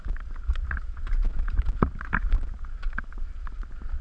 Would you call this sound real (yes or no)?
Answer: no